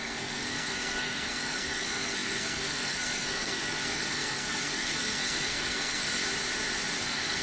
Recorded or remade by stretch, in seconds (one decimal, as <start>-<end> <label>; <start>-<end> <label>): 0.0-6.2 remade; 6.2-7.0 recorded; 7.0-7.4 remade